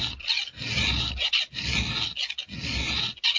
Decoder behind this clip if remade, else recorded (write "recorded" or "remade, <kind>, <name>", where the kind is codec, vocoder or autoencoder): recorded